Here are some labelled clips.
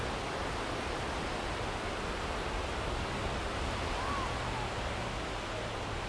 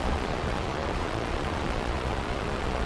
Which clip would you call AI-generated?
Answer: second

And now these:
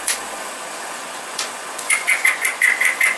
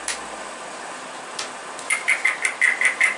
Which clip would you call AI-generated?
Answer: first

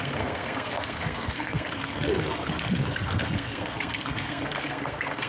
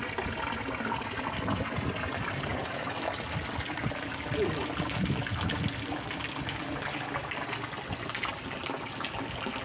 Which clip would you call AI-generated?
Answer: first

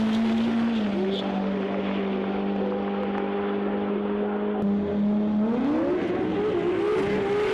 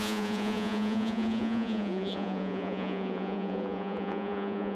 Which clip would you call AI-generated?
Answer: second